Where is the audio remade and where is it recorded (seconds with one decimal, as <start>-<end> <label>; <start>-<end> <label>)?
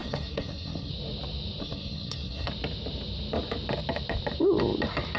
0.0-0.9 remade; 0.9-1.6 recorded; 1.6-2.5 remade; 2.5-5.2 recorded